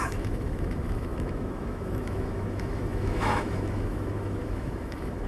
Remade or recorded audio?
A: remade